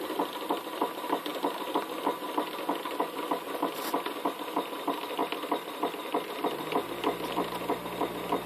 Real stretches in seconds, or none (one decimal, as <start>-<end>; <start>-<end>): 0.0-1.3; 3.0-5.2; 6.3-8.5

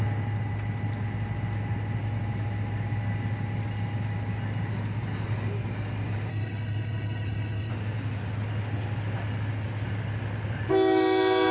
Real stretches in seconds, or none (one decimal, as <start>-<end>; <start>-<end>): 0.0-6.3; 7.7-11.5